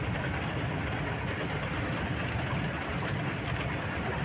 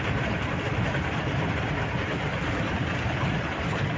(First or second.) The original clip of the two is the first